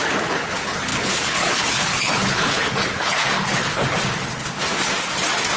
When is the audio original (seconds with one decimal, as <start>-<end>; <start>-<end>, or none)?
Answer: 3.8-5.6